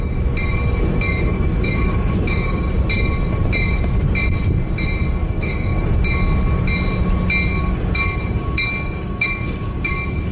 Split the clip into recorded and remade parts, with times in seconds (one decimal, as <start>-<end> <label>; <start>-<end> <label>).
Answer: 0.0-0.9 recorded; 0.9-2.6 remade; 2.6-5.2 recorded; 5.2-6.0 remade; 6.0-7.6 recorded; 7.6-9.9 remade; 9.9-10.3 recorded